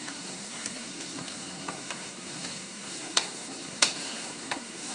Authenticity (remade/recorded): remade